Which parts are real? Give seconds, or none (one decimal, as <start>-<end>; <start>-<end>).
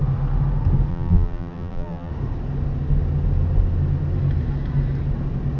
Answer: 0.0-0.9; 2.1-5.6